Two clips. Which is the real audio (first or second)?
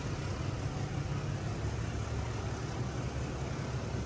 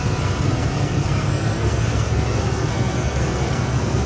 first